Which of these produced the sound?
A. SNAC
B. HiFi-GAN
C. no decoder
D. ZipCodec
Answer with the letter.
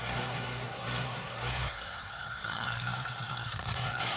A